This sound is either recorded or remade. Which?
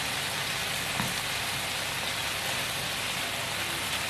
remade